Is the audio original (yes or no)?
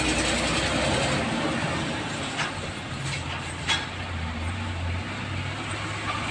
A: yes